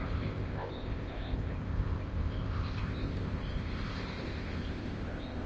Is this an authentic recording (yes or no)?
no